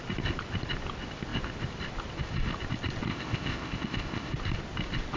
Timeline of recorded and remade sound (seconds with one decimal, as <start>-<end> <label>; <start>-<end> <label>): 0.0-3.1 recorded; 3.1-4.3 remade; 4.3-5.2 recorded